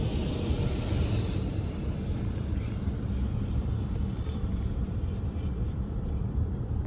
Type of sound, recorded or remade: remade